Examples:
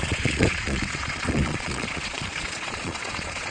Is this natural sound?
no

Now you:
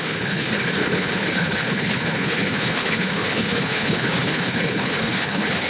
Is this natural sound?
no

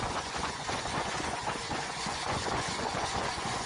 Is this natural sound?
no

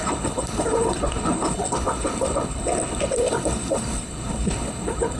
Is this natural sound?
no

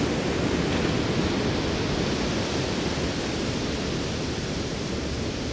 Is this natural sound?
yes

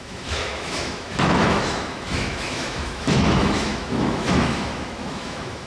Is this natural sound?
no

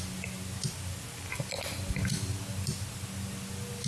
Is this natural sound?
yes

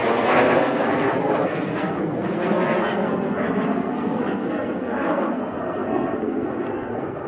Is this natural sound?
no